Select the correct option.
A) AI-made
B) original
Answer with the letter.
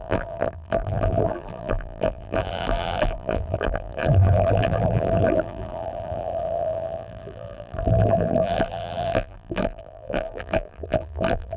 A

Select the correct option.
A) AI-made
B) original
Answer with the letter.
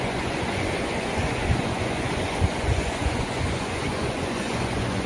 A